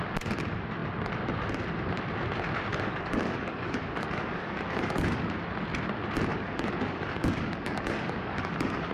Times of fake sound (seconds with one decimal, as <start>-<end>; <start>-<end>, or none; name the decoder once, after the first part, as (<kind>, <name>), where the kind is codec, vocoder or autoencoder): 2.7-5.2 (codec, DAC); 6.3-8.9